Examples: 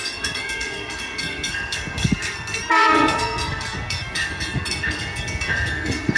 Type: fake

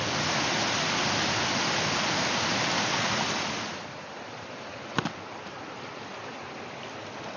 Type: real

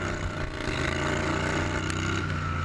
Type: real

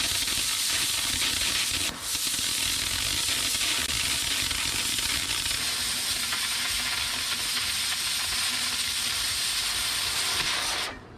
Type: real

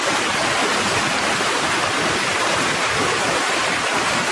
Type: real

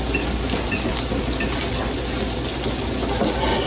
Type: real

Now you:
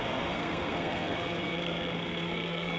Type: fake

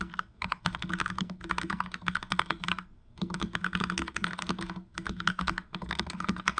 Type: fake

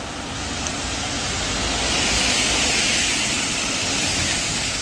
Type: real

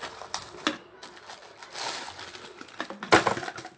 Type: real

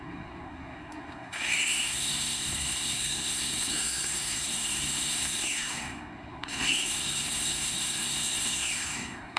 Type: fake